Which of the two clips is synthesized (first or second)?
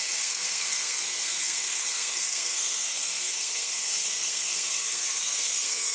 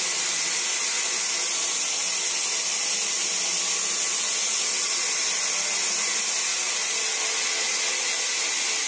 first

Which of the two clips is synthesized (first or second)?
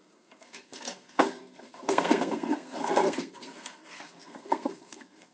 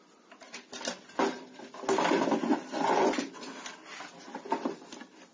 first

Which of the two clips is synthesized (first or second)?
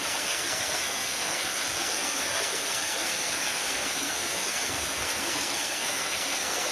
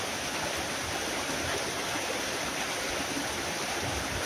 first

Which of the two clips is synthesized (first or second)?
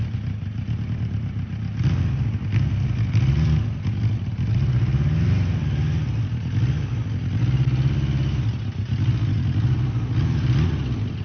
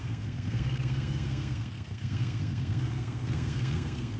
second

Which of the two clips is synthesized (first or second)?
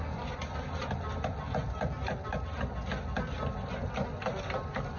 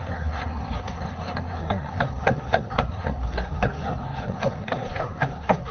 second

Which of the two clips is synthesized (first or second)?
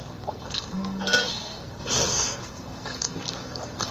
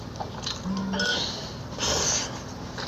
first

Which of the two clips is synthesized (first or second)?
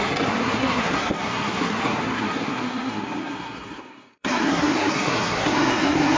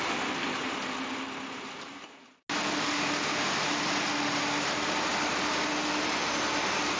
first